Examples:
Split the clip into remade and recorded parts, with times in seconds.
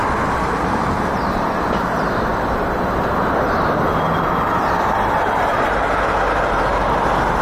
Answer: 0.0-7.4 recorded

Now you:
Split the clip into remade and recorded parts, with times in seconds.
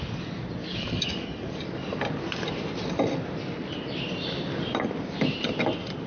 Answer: 0.0-0.6 recorded; 0.6-1.6 remade; 1.6-6.1 recorded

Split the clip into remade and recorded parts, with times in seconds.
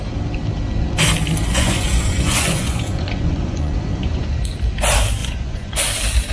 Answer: 0.0-1.5 recorded; 1.5-4.4 remade; 4.4-5.2 recorded; 5.2-5.8 remade; 5.8-6.3 recorded